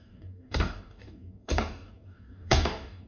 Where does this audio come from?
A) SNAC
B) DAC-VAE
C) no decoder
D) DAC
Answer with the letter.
D